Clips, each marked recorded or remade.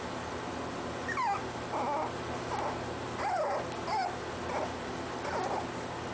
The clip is recorded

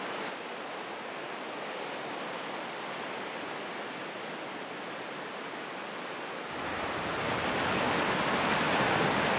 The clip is recorded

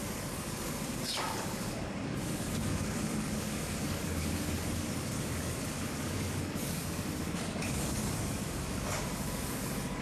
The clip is remade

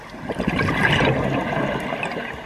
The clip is recorded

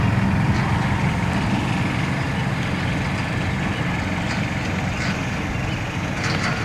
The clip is recorded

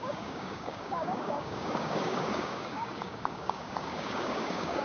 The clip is remade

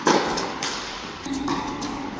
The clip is remade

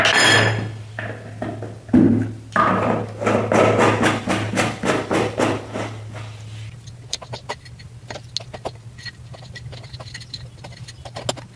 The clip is recorded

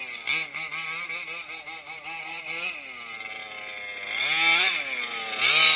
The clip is recorded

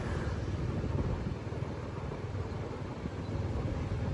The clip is recorded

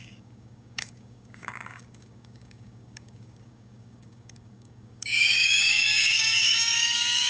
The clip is remade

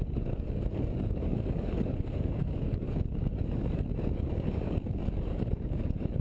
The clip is remade